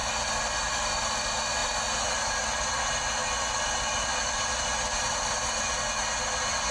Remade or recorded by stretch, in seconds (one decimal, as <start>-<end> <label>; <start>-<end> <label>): 0.0-6.7 recorded